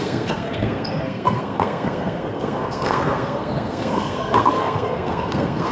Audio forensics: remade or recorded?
remade